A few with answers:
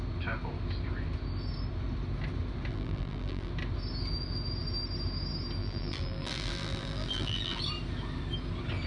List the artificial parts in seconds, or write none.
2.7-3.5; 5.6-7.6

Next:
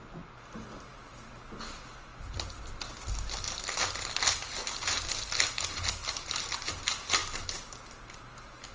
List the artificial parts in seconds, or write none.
none

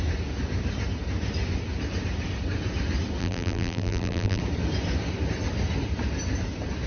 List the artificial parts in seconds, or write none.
3.2-4.4